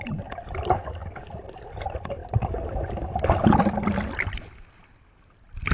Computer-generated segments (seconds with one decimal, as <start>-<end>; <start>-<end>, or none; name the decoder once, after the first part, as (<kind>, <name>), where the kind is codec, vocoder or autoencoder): 1.0-1.8 (vocoder, BigVGAN v2)